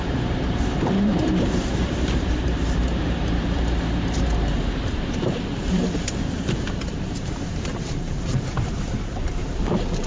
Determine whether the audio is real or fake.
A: fake